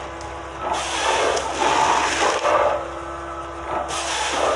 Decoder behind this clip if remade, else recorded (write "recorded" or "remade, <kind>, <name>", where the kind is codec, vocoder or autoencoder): recorded